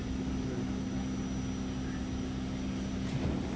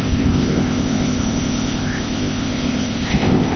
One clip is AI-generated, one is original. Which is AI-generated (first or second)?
second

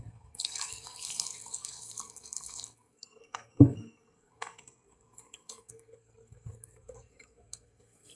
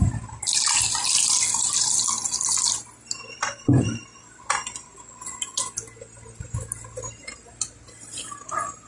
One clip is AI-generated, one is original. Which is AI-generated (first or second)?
first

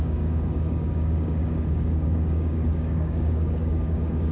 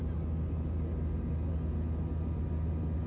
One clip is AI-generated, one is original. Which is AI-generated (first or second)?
first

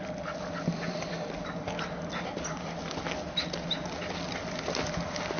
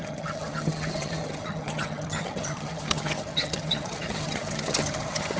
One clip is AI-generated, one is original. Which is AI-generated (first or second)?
second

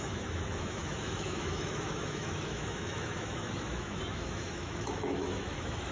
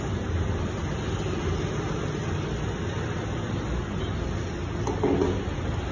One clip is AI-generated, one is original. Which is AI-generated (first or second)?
first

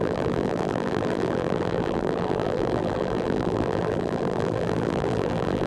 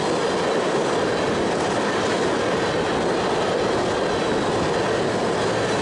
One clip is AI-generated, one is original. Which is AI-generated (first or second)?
first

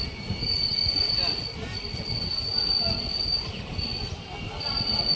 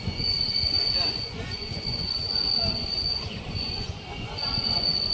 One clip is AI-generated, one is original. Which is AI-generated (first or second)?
second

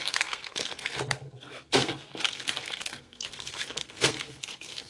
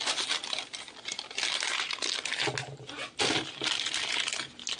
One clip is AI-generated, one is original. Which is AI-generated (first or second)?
first